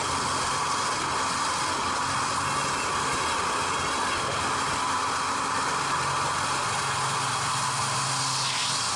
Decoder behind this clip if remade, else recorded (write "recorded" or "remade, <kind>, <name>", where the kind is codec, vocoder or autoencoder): recorded